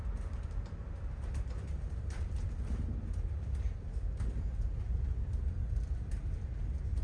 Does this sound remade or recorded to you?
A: recorded